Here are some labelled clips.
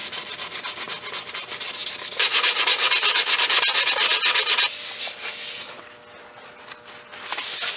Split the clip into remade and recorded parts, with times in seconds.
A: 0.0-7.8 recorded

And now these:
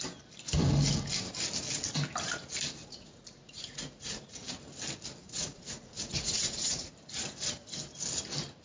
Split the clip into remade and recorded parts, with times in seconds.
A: 0.0-2.8 recorded; 2.8-4.2 remade; 4.2-5.2 recorded; 5.2-6.9 remade; 6.9-8.6 recorded

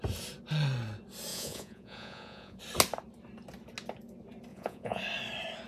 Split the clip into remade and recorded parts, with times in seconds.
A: 0.0-1.3 recorded; 1.3-2.6 remade; 2.6-4.5 recorded; 4.5-5.0 remade; 5.0-5.7 recorded